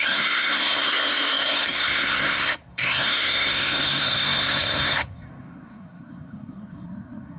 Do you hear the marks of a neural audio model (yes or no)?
yes